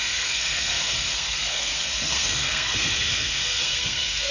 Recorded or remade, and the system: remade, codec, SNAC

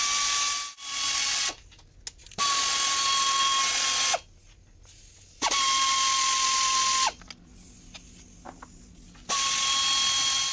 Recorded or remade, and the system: recorded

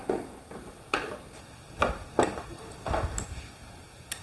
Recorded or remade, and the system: recorded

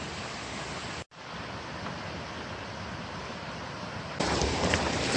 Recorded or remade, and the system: recorded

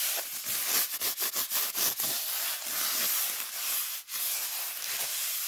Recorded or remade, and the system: recorded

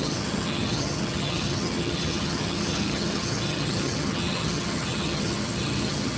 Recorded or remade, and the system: remade, vocoder, HiFi-GAN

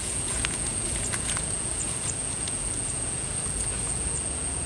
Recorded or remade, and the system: remade, vocoder, Vocos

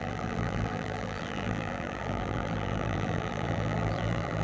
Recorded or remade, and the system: remade, vocoder, BigVGAN v2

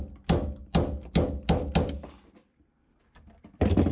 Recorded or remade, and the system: recorded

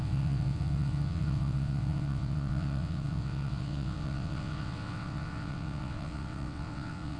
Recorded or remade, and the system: remade, vocoder, WaveNeXt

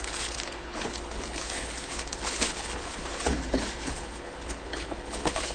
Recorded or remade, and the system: remade, codec, HILCodec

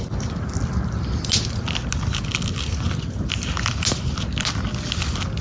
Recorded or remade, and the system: recorded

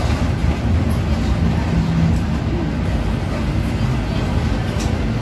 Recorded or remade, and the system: recorded